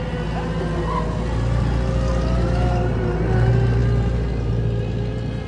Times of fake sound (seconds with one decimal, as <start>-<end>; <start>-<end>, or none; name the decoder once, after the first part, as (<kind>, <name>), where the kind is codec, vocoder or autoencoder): none